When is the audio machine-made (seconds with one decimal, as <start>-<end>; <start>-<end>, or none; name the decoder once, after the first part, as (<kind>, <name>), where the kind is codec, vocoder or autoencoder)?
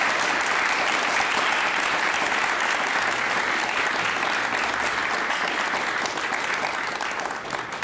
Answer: none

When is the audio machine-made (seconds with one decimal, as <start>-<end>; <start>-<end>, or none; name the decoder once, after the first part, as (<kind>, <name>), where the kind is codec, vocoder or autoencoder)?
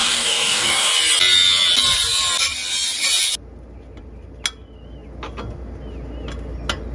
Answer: 0.0-0.9 (codec, DAC)